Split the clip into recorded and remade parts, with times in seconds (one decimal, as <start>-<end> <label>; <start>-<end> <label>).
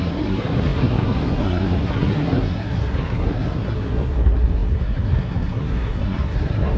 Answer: 0.0-6.8 remade